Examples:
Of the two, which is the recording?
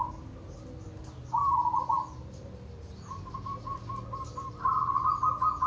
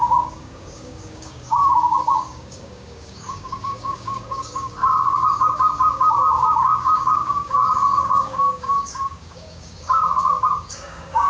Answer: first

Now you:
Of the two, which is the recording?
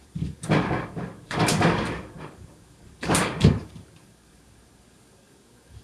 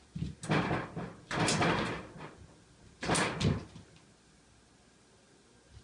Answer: second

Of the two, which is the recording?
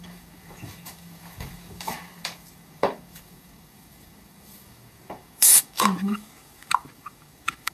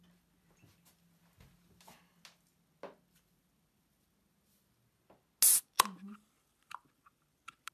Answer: second